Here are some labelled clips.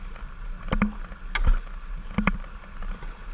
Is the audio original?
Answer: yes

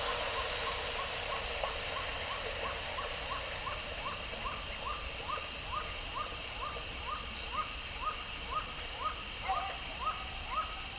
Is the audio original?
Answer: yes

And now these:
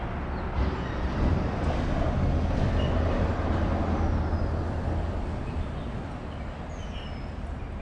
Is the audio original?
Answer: yes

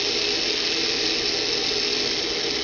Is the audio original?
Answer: yes